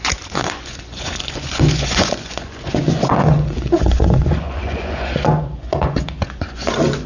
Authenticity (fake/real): fake